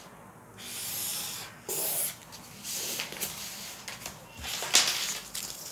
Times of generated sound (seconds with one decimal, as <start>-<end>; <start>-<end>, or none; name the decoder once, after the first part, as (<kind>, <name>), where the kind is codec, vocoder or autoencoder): none